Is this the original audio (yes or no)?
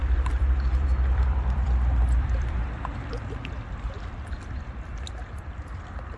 no